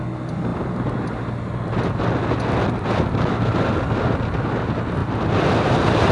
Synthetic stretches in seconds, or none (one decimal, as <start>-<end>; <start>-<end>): none